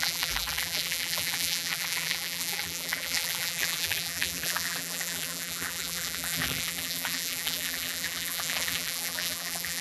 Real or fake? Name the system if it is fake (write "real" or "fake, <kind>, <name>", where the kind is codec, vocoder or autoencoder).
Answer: fake, vocoder, BigVGAN v2